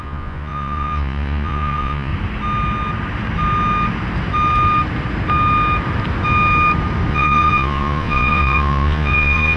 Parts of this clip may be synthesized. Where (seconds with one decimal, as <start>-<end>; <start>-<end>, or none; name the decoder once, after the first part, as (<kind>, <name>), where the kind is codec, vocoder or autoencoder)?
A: 0.0-2.1 (vocoder, Vocos); 7.1-9.6